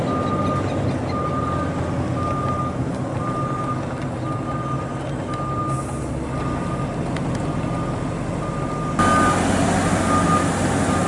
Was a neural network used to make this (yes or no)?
no